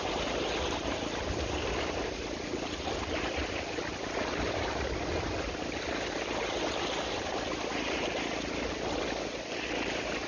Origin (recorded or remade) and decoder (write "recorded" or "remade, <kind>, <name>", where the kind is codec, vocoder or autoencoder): recorded